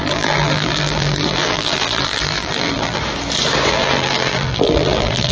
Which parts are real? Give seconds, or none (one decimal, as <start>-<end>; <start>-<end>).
3.0-3.7